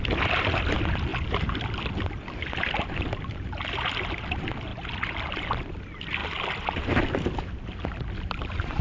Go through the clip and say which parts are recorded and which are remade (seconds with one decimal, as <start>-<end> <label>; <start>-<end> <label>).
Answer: 0.0-8.8 recorded